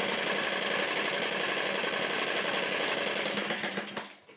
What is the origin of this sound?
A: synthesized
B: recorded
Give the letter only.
B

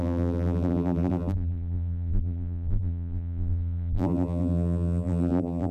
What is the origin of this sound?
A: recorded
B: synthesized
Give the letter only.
B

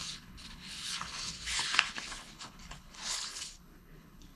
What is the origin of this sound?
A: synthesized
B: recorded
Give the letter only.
A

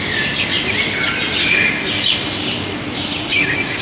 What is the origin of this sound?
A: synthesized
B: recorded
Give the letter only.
B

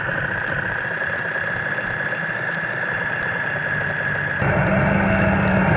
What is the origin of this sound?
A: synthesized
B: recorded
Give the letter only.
B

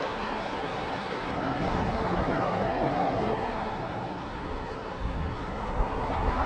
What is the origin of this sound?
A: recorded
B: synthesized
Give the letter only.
B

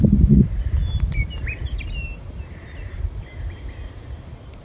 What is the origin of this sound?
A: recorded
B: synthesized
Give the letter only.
A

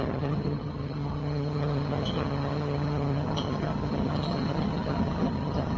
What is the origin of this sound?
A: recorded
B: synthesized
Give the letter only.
B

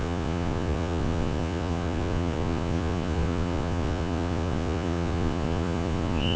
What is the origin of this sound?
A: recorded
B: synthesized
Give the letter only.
B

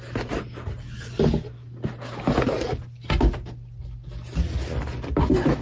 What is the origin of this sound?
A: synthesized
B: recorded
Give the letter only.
B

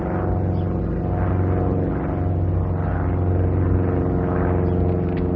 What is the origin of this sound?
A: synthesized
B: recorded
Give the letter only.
B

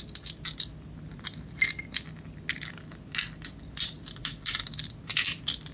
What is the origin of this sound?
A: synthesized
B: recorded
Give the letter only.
B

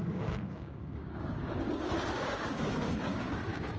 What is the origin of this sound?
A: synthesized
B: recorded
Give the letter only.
A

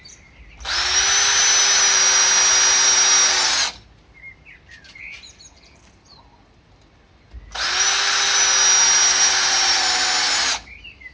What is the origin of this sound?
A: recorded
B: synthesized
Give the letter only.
A